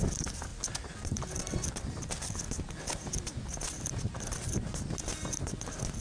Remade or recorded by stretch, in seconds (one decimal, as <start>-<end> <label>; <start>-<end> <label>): 0.0-6.0 recorded